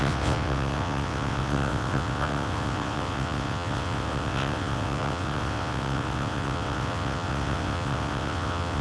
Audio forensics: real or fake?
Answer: fake